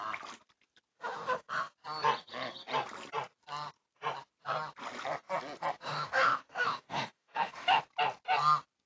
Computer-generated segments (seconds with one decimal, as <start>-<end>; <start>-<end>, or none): 0.9-1.7; 5.8-7.8